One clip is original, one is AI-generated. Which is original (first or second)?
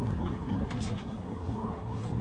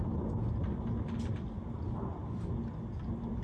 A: second